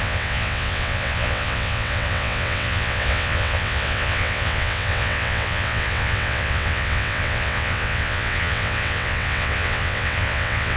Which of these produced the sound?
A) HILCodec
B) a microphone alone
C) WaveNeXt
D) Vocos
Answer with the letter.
C